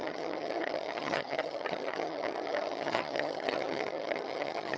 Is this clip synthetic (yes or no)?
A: yes